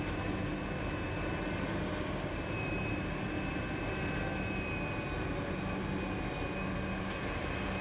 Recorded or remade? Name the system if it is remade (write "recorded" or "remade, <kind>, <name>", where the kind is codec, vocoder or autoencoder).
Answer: recorded